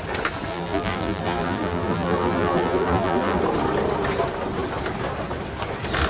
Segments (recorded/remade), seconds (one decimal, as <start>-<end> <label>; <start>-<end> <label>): 0.0-0.5 recorded; 0.5-3.4 remade; 3.4-6.1 recorded